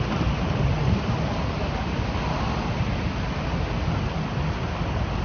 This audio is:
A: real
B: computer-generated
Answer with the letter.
A